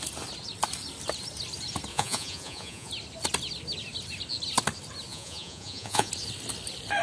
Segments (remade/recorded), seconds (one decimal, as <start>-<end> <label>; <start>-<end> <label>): 0.0-1.9 recorded; 1.9-2.9 remade; 2.9-5.1 recorded; 5.1-6.1 remade; 6.1-7.0 recorded